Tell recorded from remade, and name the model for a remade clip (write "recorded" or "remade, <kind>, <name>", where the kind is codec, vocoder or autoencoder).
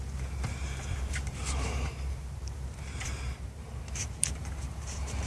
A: remade, vocoder, BigVGAN v2